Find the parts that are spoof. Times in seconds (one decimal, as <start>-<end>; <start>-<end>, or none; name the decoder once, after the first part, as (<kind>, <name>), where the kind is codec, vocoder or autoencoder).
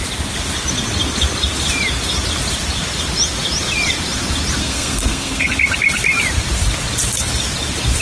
4.6-5.5 (codec, SNAC)